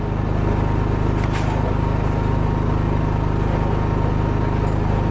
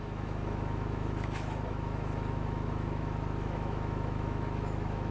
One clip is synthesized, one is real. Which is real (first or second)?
first